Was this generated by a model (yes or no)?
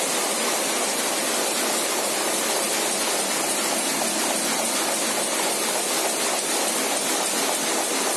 no